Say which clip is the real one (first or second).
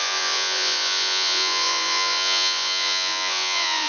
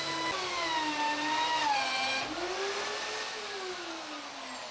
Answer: second